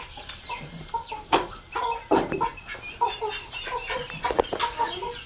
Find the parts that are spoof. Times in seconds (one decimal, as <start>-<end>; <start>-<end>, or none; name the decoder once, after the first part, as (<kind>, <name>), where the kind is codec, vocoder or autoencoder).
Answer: 0.5-1.4 (vocoder, BigVGAN v2)